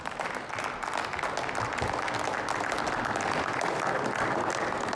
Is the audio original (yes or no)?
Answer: yes